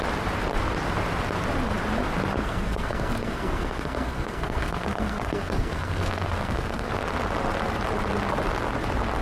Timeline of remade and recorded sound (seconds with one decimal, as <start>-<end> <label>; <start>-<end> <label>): 0.0-2.4 recorded; 2.4-6.9 remade; 6.9-9.2 recorded